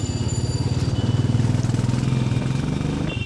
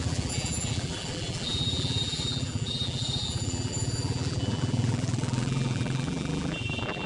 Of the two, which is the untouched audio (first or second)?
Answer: first